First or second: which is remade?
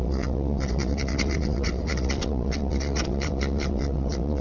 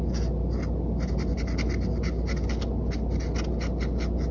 first